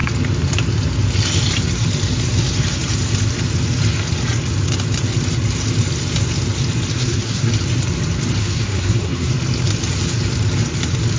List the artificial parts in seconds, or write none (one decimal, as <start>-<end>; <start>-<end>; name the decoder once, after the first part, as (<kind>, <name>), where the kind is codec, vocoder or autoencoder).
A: 6.9-7.5 (codec, SNAC); 8.4-9.3